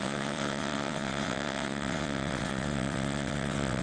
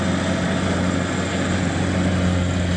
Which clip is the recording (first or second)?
second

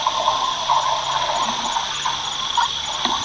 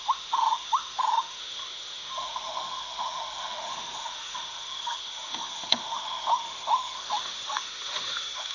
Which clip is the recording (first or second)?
first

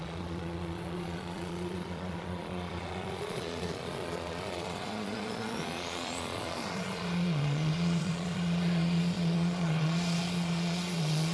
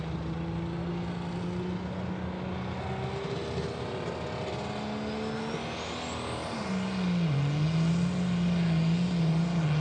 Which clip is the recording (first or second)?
second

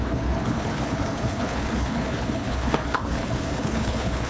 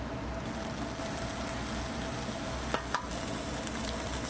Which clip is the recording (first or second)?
second